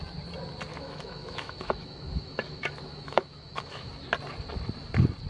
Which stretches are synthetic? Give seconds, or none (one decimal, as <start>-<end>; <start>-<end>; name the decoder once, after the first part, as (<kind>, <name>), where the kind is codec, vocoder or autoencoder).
0.7-3.9 (autoencoder, DAC-VAE)